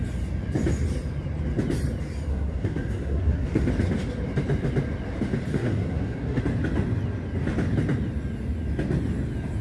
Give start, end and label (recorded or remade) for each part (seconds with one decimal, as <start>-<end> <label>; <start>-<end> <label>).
0.0-2.3 recorded; 2.3-3.7 remade; 3.7-5.5 recorded; 5.5-6.4 remade; 6.4-9.6 recorded